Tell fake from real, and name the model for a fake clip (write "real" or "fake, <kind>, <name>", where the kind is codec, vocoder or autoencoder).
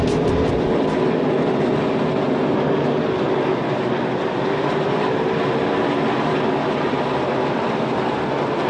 real